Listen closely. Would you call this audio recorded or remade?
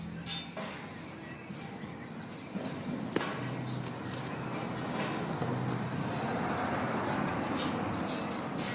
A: recorded